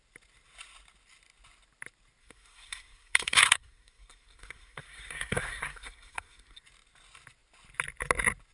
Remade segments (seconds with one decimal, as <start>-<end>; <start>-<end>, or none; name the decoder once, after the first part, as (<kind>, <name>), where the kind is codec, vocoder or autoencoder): 2.2-6.6 (codec, SNAC)